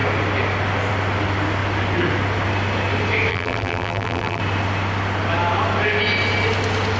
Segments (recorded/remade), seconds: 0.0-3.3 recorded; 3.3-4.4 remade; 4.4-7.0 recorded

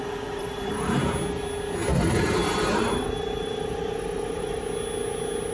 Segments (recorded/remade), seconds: 0.0-0.4 recorded; 0.4-0.9 remade; 0.9-1.9 recorded; 1.9-4.6 remade; 4.6-5.5 recorded

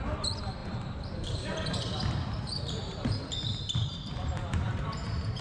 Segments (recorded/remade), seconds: 0.0-5.4 remade

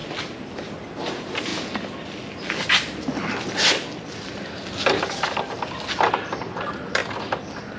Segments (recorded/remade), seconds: 0.0-1.0 recorded; 1.0-1.5 remade; 1.5-6.1 recorded; 6.1-7.0 remade; 7.0-7.8 recorded

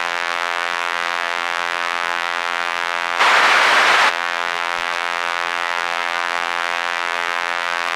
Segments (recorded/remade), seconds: 0.0-3.2 remade; 3.2-4.1 recorded; 4.1-8.0 remade

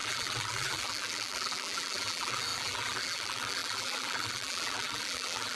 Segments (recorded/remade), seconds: 0.0-5.5 remade

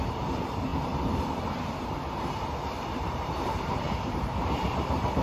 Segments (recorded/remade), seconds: 0.0-5.2 remade